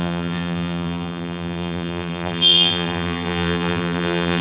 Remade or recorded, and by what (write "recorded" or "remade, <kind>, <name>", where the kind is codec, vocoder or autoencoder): remade, vocoder, BigVGAN v2